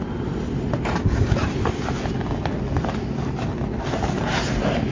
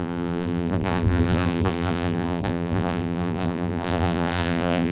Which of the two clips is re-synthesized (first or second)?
second